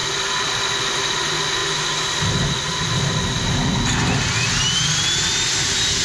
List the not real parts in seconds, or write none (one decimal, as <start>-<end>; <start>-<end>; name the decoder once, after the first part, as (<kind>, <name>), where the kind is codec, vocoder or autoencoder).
none